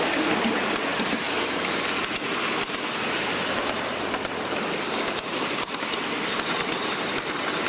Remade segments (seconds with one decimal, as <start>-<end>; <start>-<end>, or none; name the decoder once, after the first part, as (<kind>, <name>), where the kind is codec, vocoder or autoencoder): none